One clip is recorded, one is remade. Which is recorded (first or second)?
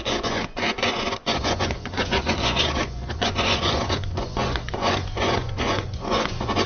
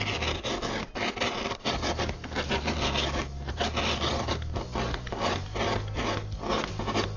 second